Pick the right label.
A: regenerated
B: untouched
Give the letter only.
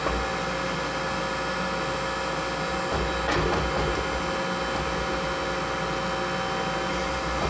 B